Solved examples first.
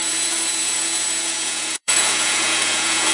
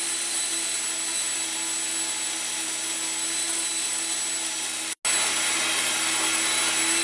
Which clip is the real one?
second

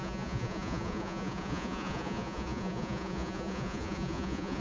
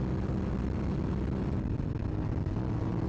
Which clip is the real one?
second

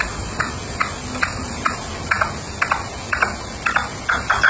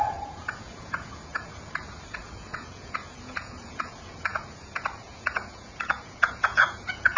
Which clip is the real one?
first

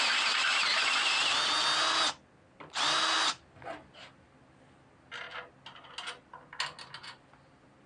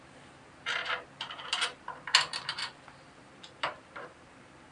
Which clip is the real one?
first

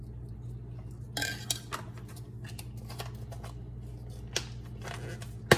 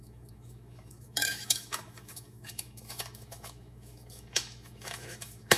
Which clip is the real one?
first